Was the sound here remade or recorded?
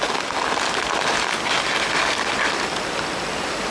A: recorded